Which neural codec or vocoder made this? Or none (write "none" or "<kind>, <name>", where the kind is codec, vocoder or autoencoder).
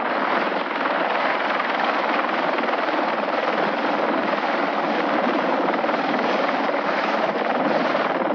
vocoder, BigVGAN v2